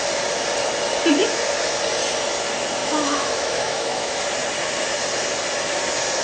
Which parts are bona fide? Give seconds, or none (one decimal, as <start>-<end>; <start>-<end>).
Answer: 0.0-2.8; 4.2-6.2